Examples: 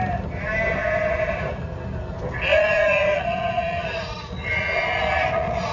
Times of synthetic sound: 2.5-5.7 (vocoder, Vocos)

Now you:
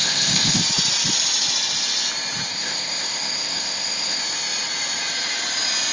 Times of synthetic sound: 0.0-0.6 (codec, ZipCodec); 2.5-4.2

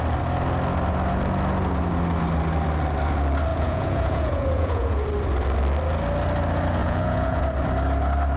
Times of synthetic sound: 3.5-5.0 (vocoder, Vocos); 6.8-7.4